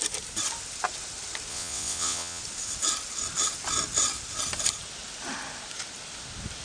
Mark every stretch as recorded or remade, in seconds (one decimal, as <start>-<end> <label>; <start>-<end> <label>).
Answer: 0.0-1.5 recorded; 1.5-2.4 remade; 2.4-6.6 recorded